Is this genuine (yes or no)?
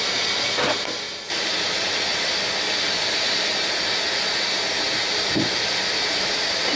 yes